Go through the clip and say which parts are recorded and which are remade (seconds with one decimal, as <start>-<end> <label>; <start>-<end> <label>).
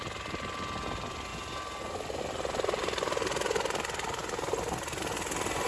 0.0-5.7 recorded